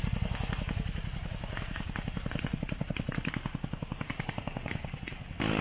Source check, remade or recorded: recorded